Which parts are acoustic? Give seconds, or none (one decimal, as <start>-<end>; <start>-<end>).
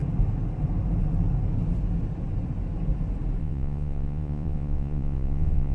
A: 0.0-3.4